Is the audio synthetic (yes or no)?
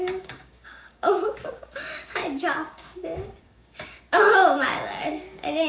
yes